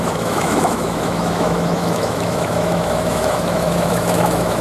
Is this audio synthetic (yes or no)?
yes